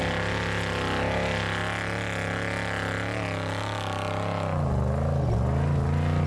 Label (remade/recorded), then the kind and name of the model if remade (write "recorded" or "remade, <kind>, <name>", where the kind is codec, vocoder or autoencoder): recorded